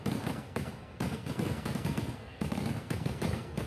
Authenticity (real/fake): fake